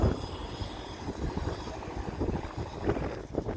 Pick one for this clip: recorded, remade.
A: recorded